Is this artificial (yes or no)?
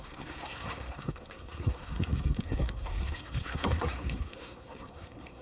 yes